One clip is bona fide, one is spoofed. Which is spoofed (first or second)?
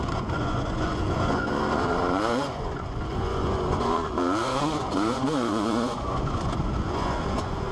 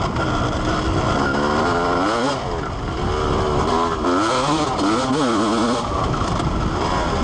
first